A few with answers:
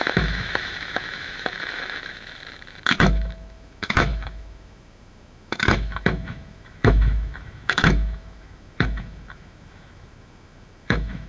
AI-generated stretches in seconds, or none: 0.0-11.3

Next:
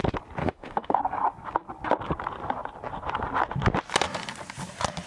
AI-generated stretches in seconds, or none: 0.4-1.0